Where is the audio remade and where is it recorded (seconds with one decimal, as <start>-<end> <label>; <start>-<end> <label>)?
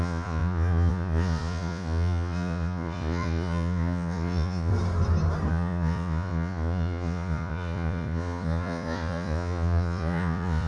0.0-4.7 remade; 4.7-5.5 recorded; 5.5-10.7 remade